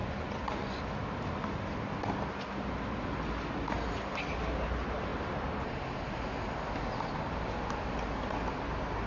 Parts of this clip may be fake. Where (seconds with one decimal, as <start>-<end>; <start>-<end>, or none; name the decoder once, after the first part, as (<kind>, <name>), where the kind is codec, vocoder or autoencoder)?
0.0-0.8 (vocoder, Vocos)